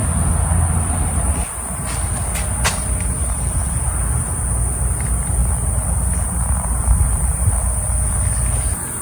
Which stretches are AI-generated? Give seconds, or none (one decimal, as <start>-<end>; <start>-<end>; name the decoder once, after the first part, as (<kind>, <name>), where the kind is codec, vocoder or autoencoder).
3.2-3.9 (vocoder, BigVGAN v2)